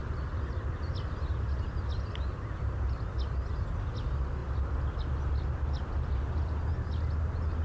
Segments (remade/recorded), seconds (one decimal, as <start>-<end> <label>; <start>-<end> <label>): 0.0-7.6 recorded

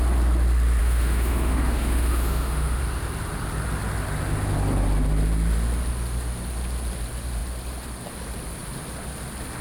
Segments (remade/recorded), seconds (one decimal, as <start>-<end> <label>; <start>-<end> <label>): 0.0-0.8 recorded; 0.8-2.8 remade; 2.8-9.6 recorded

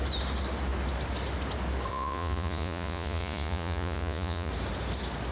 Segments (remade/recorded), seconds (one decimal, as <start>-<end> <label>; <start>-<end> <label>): 0.0-1.9 recorded; 1.9-4.5 remade; 4.5-5.3 recorded

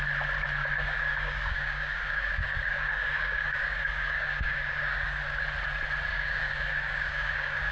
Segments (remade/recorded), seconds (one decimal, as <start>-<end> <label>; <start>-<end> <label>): 0.0-0.6 recorded; 0.6-5.2 remade; 5.2-6.1 recorded; 6.1-7.7 remade

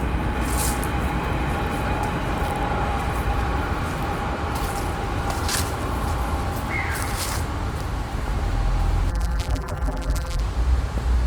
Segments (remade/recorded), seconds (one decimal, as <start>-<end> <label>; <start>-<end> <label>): 0.0-9.1 recorded; 9.1-10.4 remade; 10.4-11.3 recorded

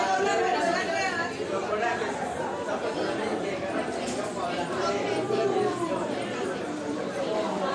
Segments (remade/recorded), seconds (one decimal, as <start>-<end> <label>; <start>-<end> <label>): 0.0-1.6 recorded; 1.6-2.2 remade; 2.2-2.8 recorded; 2.8-7.7 remade

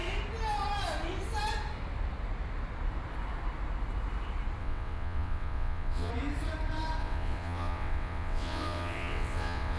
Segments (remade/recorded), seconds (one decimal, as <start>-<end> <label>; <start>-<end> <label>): 0.0-4.6 recorded; 4.6-6.1 remade; 6.1-7.0 recorded; 7.0-9.8 remade

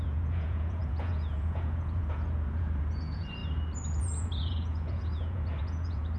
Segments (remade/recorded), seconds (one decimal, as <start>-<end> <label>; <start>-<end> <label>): 0.0-3.4 remade; 3.4-4.0 recorded; 4.0-6.2 remade